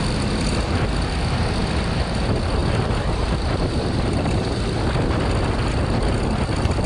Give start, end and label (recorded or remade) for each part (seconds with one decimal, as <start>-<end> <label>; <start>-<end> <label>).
0.0-2.6 recorded; 2.6-4.6 remade; 4.6-6.9 recorded